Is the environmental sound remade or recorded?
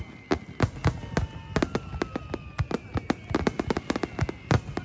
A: recorded